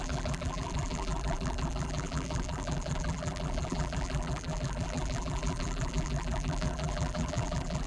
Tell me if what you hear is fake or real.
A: fake